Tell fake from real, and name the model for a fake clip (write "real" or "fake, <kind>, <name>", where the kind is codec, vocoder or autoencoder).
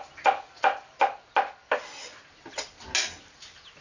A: real